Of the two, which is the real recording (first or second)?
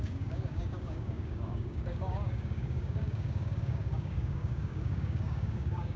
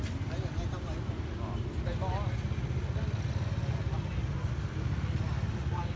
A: second